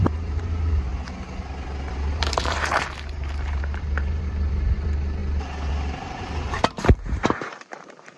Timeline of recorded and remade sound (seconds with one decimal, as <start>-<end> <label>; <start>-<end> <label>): 0.0-0.9 remade; 0.9-1.9 recorded; 1.9-5.2 remade; 5.2-5.7 recorded; 5.7-8.2 remade